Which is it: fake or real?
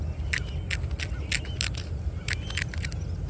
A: real